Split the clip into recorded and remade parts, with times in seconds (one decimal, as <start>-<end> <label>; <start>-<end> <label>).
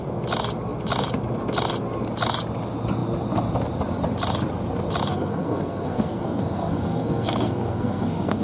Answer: 0.0-5.1 recorded; 5.1-8.4 remade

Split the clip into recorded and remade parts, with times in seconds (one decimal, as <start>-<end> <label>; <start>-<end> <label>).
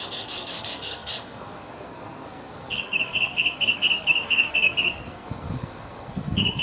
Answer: 0.0-6.6 remade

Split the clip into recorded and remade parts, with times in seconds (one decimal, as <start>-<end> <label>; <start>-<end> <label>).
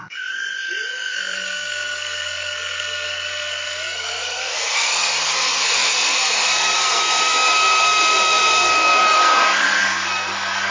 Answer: 0.0-10.7 remade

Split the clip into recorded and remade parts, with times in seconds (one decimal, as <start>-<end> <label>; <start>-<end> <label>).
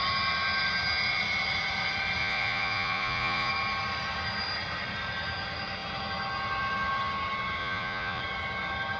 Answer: 0.0-2.2 recorded; 2.2-3.5 remade; 3.5-7.6 recorded; 7.6-8.2 remade; 8.2-9.0 recorded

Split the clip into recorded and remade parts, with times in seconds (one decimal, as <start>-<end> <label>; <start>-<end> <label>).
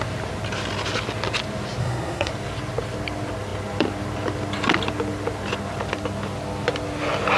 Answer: 0.0-1.8 recorded; 1.8-2.3 remade; 2.3-7.4 recorded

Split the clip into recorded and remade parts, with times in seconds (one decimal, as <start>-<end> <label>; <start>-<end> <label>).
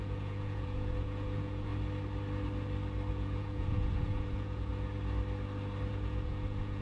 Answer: 0.0-1.7 remade; 1.7-3.1 recorded; 3.1-4.7 remade; 4.7-5.9 recorded; 5.9-6.8 remade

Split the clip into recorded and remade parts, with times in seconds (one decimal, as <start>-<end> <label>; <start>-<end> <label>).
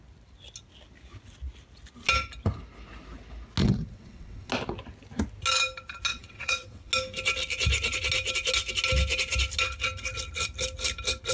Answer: 0.0-3.6 recorded; 3.6-4.5 remade; 4.5-6.1 recorded; 6.1-6.9 remade; 6.9-11.3 recorded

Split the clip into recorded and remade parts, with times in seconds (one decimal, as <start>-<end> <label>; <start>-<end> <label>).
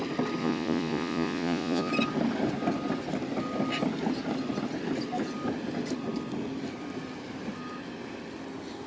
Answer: 0.0-0.4 recorded; 0.4-1.9 remade; 1.9-8.9 recorded